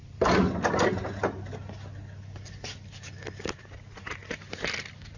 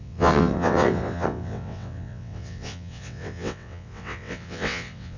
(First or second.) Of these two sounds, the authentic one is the first